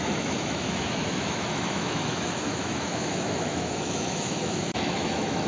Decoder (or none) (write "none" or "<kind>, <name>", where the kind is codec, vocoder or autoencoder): autoencoder, DAC-VAE